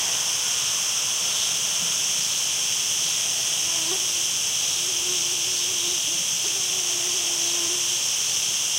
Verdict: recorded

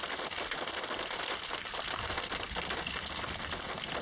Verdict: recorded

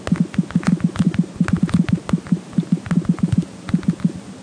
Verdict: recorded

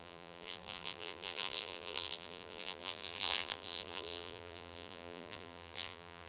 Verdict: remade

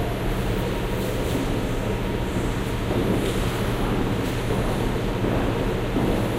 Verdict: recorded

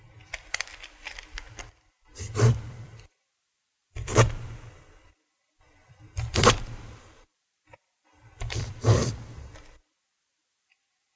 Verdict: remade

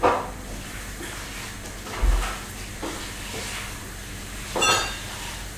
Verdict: recorded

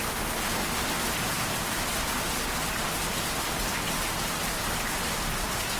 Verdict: recorded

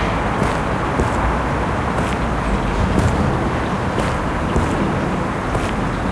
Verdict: recorded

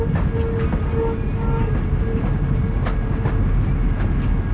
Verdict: recorded